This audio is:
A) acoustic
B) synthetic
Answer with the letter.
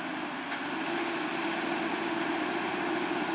A